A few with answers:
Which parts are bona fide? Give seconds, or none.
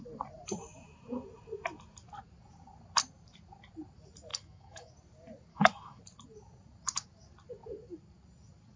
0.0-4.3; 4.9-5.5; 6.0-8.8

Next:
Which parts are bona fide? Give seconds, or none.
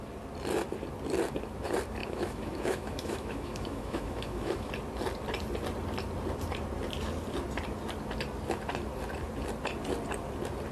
0.0-2.0; 4.7-10.7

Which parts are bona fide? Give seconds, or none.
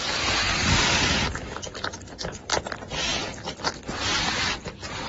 0.0-5.1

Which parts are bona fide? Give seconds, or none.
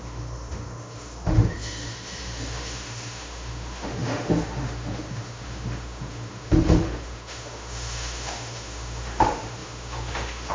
none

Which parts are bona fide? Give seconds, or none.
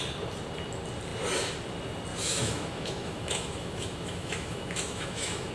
0.0-2.1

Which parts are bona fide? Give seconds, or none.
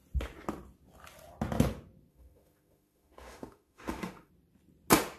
0.0-2.1; 4.3-5.2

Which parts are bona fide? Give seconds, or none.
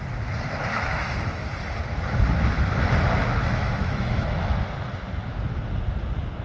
0.0-0.7; 1.5-3.2; 4.5-6.4